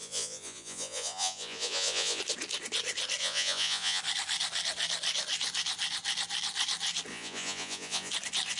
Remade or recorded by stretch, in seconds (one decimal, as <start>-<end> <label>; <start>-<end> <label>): 0.0-2.2 remade; 2.2-3.2 recorded; 3.2-4.0 remade; 4.0-7.1 recorded; 7.1-8.1 remade; 8.1-8.6 recorded